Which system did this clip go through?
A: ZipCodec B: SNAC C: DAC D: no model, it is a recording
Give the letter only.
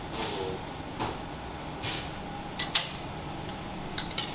D